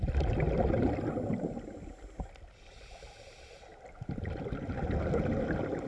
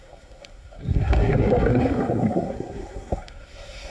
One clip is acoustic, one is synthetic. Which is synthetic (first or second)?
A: second